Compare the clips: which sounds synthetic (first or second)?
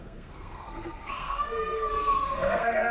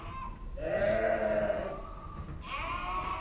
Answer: first